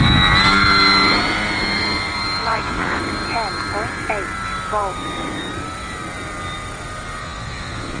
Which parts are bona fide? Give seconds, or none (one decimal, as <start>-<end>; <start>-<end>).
0.0-2.4; 3.0-7.2

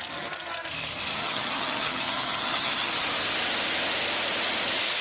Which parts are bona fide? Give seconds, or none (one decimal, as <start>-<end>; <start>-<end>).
0.0-1.2; 2.9-5.0

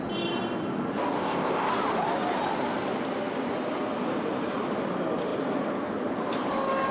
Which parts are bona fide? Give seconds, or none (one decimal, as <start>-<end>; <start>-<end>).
0.0-1.2; 1.7-6.9

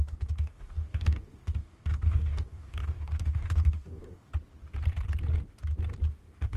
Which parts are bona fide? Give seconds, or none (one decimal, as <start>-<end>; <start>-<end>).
4.3-6.1

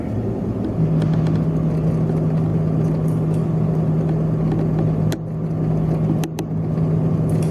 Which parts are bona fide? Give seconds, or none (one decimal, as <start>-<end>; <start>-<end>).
0.0-7.5

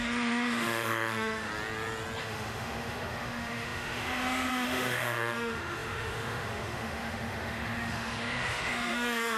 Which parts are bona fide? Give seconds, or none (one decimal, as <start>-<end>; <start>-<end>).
1.5-2.2